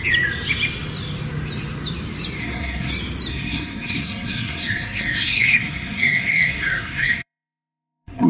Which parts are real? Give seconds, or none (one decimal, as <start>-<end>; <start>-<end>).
0.0-2.4; 2.9-3.3